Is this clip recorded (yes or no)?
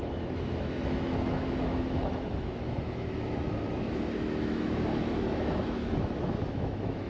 no